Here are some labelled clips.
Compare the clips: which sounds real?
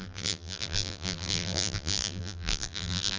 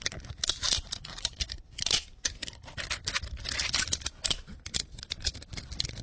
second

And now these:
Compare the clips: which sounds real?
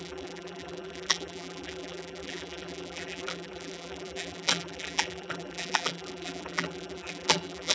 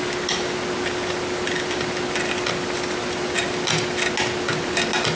second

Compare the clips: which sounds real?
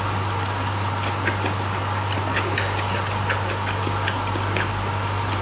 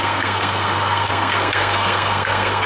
first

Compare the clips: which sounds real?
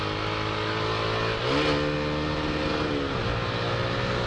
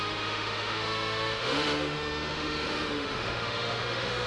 first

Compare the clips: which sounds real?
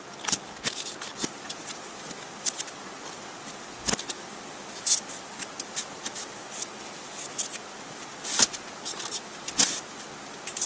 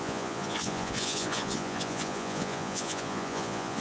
first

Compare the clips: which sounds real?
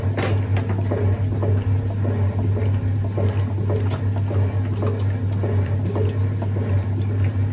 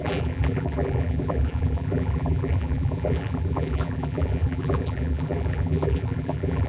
first